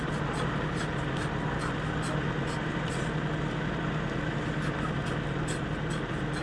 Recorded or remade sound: recorded